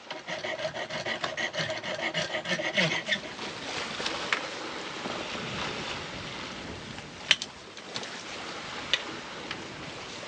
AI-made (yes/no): no